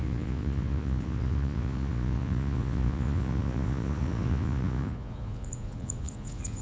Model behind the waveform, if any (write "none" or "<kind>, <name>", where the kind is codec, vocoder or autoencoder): vocoder, Vocos